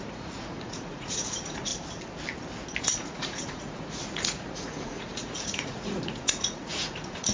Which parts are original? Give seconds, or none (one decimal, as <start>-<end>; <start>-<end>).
1.7-2.8